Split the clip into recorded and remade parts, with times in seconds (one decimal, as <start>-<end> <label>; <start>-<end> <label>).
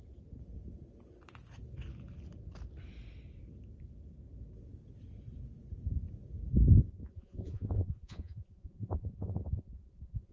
0.0-6.9 recorded; 6.9-10.3 remade